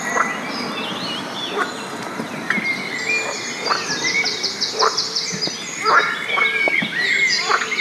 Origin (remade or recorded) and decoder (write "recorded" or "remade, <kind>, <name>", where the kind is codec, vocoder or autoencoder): recorded